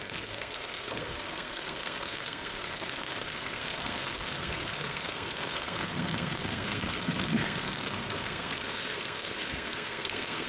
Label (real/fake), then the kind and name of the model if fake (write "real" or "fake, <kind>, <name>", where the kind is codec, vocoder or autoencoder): fake, codec, SNAC